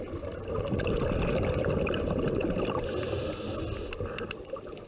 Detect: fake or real real